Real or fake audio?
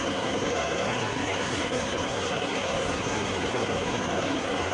fake